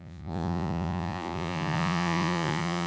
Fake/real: fake